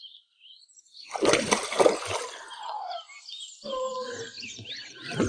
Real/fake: real